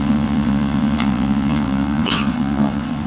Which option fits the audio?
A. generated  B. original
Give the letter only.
A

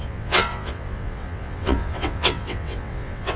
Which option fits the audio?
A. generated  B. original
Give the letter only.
A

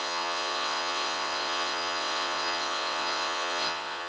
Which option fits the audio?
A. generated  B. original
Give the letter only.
A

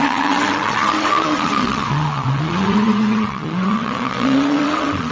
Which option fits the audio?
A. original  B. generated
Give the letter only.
B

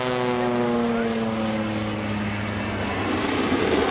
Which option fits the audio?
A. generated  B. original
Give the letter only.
B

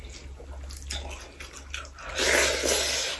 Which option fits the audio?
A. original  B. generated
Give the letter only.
A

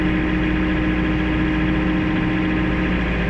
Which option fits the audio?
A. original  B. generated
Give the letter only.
A